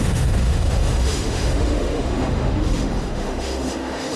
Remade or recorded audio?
remade